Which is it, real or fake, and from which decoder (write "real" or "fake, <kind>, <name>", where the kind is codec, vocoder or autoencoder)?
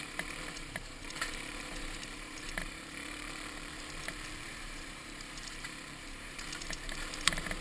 fake, vocoder, BigVGAN v2